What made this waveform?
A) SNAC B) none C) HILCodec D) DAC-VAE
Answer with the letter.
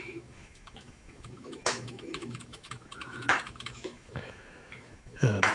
D